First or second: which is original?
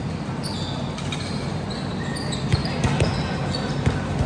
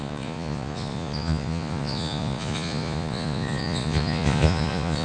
first